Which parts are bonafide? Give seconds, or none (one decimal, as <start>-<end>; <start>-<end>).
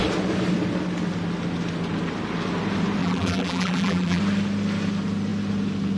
0.0-3.0; 4.2-6.0